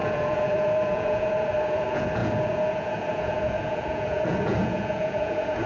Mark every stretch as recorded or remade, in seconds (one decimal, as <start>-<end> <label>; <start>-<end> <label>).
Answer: 0.0-5.7 remade